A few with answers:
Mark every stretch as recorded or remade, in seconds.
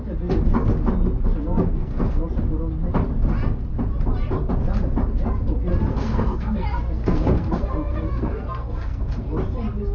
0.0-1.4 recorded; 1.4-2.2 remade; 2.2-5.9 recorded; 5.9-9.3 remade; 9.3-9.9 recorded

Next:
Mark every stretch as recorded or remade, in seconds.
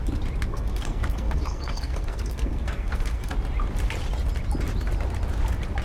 0.0-0.5 recorded; 0.5-3.3 remade; 3.3-5.8 recorded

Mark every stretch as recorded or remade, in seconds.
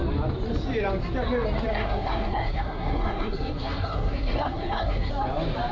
0.0-1.7 recorded; 1.7-5.1 remade; 5.1-5.7 recorded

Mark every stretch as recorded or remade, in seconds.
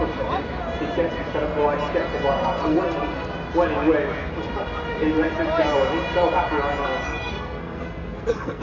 0.0-2.3 recorded; 2.3-3.3 remade; 3.3-6.8 recorded; 6.8-8.6 remade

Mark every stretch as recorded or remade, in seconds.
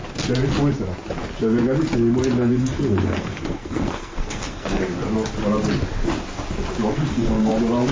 0.0-2.4 recorded; 2.4-4.8 remade; 4.8-6.9 recorded; 6.9-7.5 remade; 7.5-7.9 recorded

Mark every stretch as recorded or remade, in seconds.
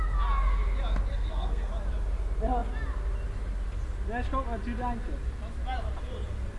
0.0-1.1 recorded; 1.1-1.7 remade; 1.7-6.6 recorded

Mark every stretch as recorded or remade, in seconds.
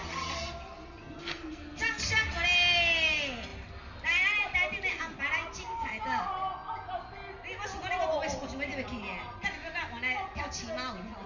0.0-1.0 recorded; 1.0-1.8 remade; 1.8-11.3 recorded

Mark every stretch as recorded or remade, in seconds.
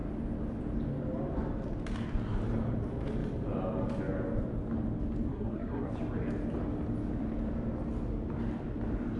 0.0-5.3 recorded; 5.3-5.9 remade; 5.9-9.2 recorded